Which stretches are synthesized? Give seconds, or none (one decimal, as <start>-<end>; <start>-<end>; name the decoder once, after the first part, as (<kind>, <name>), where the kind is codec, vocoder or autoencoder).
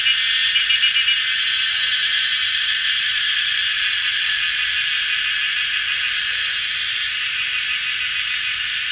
0.4-1.8 (vocoder, BigVGAN v2)